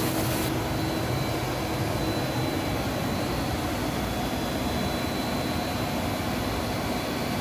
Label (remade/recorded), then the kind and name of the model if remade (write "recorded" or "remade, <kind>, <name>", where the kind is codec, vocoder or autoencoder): recorded